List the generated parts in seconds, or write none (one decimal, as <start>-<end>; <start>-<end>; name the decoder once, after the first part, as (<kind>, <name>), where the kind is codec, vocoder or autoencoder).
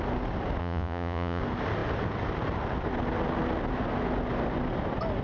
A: 0.6-1.4 (vocoder, Vocos)